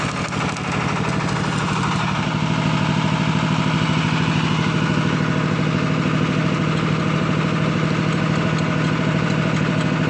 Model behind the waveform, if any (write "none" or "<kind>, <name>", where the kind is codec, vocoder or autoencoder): none